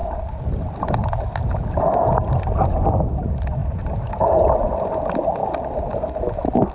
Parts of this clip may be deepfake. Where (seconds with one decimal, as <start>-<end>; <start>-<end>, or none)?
none